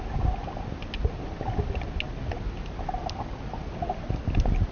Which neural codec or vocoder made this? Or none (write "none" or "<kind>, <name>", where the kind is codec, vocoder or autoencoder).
none